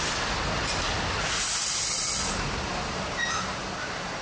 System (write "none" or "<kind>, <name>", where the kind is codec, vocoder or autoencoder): none